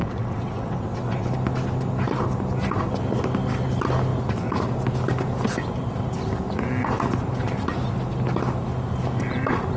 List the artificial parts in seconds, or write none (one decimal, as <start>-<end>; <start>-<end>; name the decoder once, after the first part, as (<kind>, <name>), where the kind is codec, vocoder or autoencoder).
0.0-1.3 (vocoder, WaveNeXt)